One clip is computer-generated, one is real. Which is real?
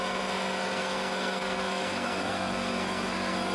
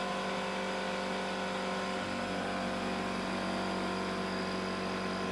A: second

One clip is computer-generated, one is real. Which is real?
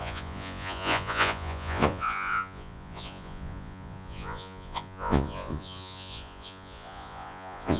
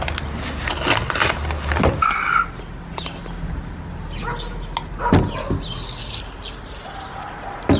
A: second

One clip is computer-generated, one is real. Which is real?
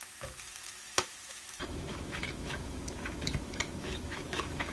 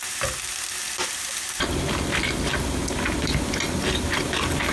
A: second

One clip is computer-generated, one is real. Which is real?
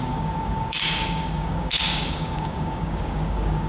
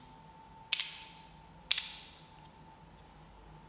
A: second